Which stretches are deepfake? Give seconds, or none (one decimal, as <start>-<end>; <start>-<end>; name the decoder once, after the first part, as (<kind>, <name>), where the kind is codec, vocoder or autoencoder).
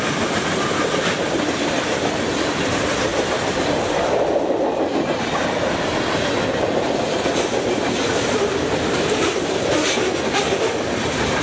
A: 0.0-3.1 (vocoder, BigVGAN v2); 3.9-11.4